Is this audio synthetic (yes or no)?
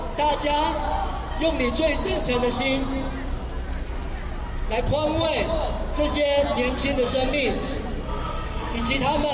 no